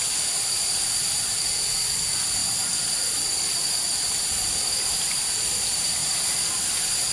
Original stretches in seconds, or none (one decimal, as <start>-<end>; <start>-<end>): 6.0-7.1